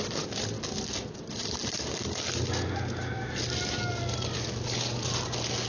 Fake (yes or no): no